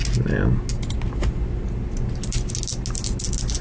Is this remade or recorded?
recorded